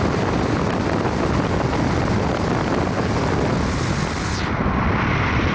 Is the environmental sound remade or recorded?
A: recorded